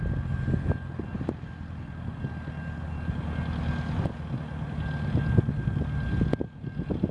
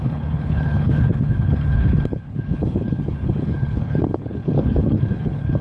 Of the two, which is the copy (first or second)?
second